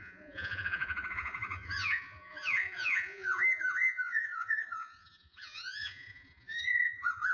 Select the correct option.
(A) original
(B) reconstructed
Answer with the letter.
B